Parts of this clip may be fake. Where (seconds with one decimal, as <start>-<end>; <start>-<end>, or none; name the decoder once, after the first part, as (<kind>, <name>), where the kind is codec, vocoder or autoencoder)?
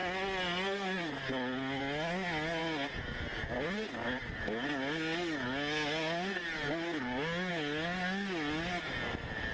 none